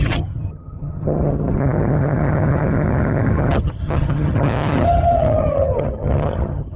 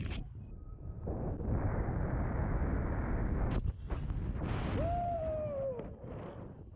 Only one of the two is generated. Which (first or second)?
first